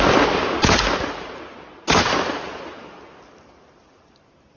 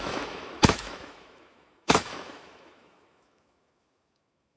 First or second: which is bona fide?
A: first